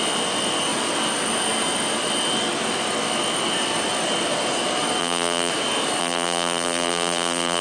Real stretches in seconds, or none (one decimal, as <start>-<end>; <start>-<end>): 0.0-5.0; 5.5-6.0